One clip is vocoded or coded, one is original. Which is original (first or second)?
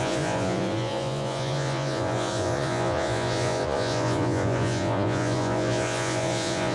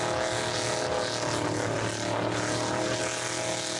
second